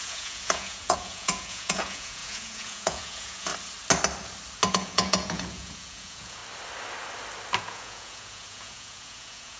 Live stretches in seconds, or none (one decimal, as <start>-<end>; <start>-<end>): 3.5-4.7; 6.4-7.6